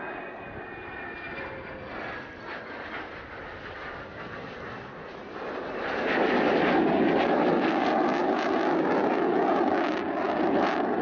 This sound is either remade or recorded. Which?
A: recorded